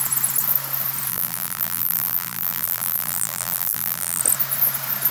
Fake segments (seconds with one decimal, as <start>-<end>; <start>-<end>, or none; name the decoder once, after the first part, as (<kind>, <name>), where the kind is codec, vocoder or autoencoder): 1.1-4.2 (vocoder, BigVGAN v2)